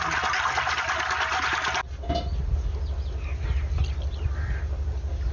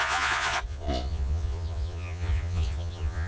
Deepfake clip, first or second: second